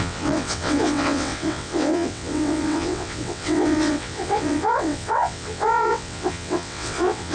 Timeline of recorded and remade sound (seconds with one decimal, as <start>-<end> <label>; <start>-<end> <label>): 0.0-7.3 remade